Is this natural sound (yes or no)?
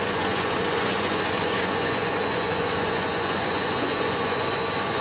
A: no